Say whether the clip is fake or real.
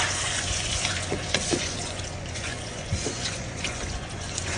fake